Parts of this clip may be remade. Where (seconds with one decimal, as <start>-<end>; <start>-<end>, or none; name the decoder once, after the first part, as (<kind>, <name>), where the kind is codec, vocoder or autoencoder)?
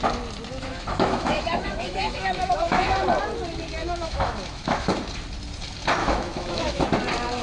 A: 0.6-2.9 (autoencoder, DAC-VAE); 3.8-4.9; 6.0-6.8